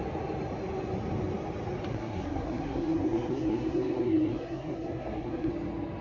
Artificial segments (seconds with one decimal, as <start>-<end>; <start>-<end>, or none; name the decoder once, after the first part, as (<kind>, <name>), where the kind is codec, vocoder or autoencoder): 1.9-5.5 (codec, SNAC)